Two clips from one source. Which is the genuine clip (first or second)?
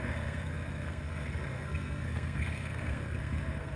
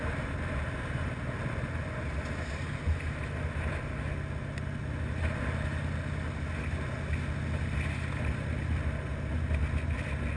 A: second